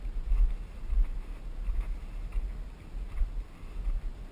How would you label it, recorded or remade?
recorded